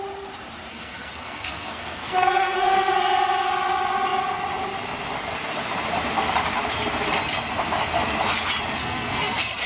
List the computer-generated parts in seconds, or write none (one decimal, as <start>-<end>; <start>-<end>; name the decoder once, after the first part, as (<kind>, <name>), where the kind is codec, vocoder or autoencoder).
0.7-2.9 (codec, SNAC); 8.8-9.7